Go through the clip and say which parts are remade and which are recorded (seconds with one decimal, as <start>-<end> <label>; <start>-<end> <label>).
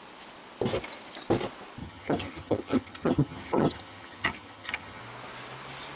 0.0-1.8 recorded; 1.8-5.0 remade; 5.0-6.0 recorded